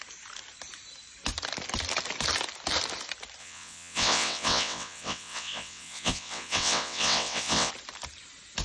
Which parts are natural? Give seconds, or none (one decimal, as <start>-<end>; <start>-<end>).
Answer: 0.0-3.4; 7.7-8.6